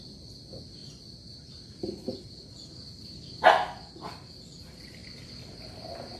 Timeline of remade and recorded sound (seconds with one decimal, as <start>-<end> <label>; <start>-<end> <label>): 0.0-6.2 recorded